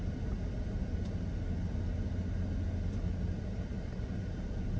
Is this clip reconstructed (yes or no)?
no